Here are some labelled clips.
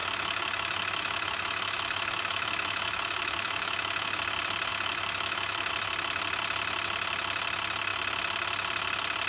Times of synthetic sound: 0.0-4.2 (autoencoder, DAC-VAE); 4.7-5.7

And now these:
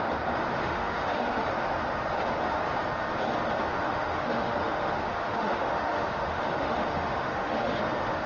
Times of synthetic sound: 0.6-1.5 (autoencoder, DAC-VAE); 3.7-7.8

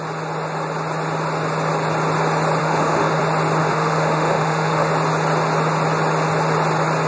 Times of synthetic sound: 2.6-3.2 (autoencoder, DAC-VAE); 3.6-4.9

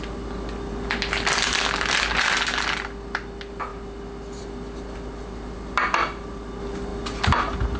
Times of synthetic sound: none

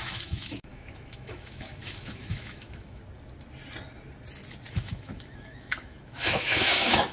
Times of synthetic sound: 0.0-3.0 (autoencoder, DAC-VAE); 4.7-7.1

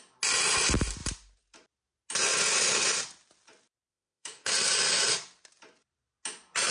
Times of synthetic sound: 3.9-4.5 (autoencoder, DAC-VAE)